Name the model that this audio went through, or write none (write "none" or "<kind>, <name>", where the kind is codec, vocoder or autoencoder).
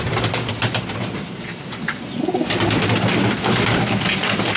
none